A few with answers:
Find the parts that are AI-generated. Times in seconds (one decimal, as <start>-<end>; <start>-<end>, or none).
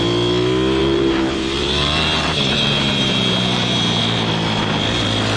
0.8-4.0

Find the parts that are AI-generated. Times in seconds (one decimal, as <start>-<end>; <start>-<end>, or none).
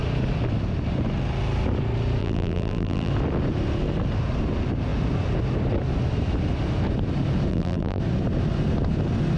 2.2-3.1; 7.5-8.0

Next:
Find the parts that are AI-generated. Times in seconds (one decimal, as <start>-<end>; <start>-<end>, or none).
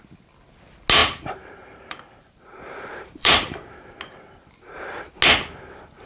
1.0-3.9